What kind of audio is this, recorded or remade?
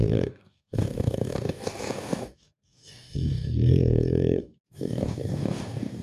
remade